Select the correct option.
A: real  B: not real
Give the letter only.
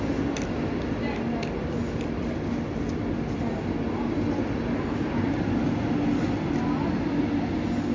A